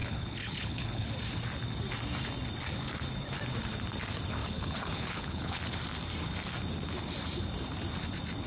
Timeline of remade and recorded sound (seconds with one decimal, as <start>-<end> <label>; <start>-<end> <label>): 0.0-1.1 remade; 1.1-4.4 recorded; 4.4-5.6 remade; 5.6-8.5 recorded